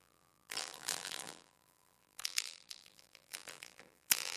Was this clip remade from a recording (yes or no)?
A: yes